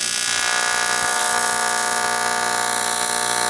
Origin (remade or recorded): recorded